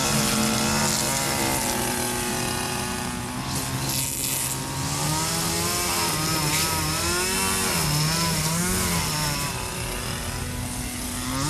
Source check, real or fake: real